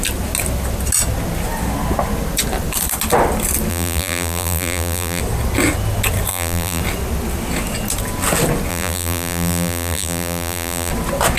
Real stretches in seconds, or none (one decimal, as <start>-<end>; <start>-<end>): 0.0-3.7; 5.2-6.3; 6.8-8.7; 10.9-11.4

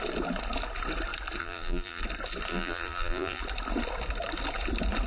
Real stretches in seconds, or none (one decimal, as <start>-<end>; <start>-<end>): 0.0-1.4; 2.0-2.5; 3.4-5.1

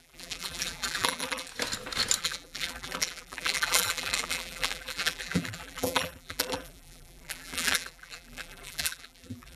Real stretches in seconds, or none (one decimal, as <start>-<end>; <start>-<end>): 1.5-2.2

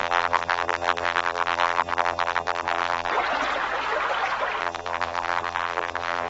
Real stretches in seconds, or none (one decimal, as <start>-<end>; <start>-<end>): 3.1-4.6